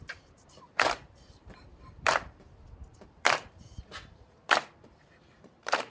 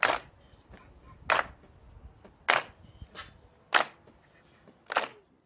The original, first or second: second